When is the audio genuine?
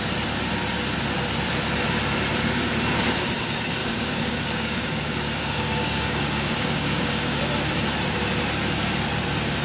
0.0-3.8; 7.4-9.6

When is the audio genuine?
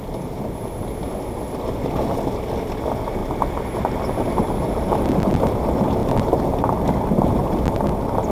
0.0-8.3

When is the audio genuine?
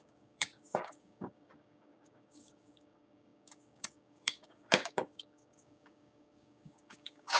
none